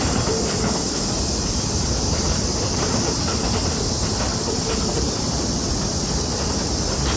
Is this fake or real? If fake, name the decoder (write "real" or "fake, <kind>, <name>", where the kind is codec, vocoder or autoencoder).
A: real